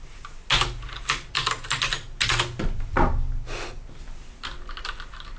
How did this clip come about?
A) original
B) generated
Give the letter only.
A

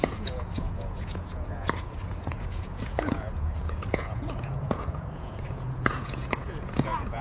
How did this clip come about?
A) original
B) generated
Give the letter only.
B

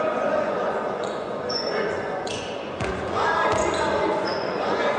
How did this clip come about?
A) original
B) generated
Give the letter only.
B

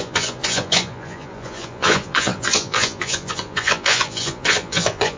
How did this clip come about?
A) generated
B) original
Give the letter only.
A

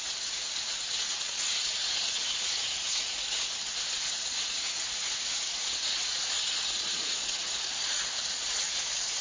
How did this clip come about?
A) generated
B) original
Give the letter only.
A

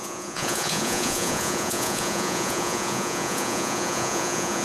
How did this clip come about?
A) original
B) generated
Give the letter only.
B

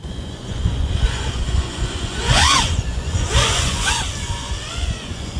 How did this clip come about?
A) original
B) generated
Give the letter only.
B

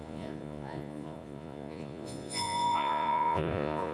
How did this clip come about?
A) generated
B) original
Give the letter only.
A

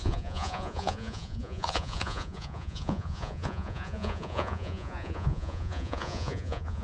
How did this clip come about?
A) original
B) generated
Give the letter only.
B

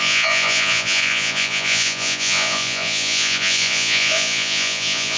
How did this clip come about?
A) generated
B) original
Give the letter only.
A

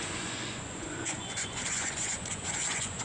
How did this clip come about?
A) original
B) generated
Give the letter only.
B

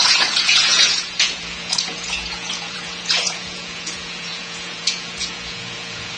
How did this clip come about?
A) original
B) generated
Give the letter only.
B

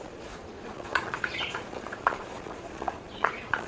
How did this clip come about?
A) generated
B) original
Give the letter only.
A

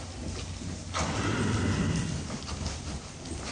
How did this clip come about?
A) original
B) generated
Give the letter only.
A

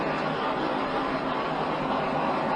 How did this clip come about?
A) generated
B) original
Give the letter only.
B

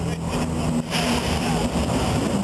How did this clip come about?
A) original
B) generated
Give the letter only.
A